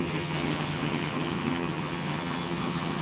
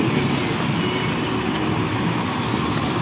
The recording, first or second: second